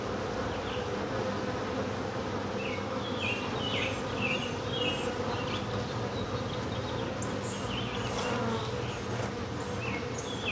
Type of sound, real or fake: real